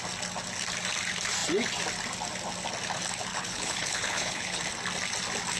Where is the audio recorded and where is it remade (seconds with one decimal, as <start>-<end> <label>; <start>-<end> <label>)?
0.0-3.3 recorded; 3.3-4.6 remade; 4.6-5.6 recorded